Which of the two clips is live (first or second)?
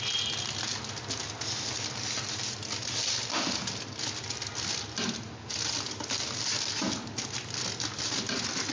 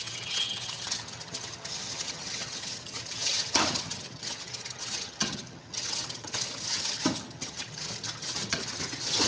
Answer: first